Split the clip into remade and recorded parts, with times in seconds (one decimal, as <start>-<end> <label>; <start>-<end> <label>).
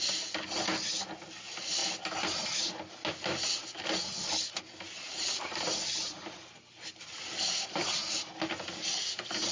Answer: 0.0-9.5 recorded